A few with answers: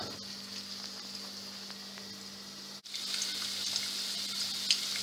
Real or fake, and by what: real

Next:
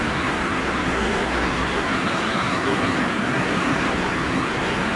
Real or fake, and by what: fake, codec, SNAC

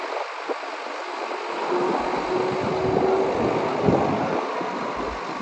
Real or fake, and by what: real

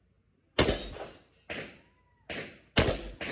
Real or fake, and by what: real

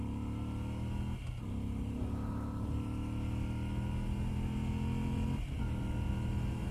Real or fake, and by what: real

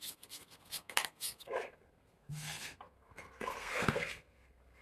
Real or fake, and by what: fake, codec, SNAC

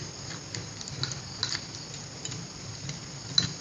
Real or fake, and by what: real